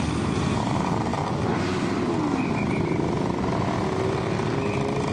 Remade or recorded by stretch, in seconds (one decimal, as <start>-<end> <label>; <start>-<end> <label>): 0.0-5.1 recorded